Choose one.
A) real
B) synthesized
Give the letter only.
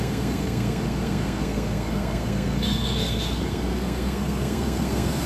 B